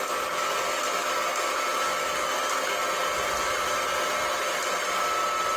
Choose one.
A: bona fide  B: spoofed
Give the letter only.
A